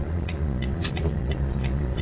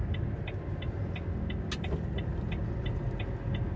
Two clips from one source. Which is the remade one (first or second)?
first